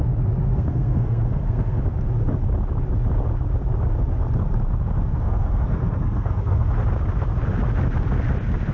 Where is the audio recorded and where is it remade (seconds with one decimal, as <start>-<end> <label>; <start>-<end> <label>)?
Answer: 0.0-0.5 recorded; 0.5-1.8 remade; 1.8-5.1 recorded; 5.1-6.7 remade; 6.7-8.7 recorded